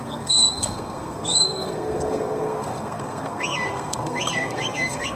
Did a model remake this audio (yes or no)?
yes